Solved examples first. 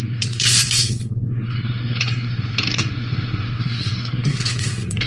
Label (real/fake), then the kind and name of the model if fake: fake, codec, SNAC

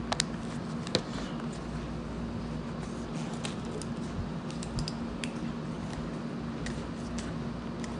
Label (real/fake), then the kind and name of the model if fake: real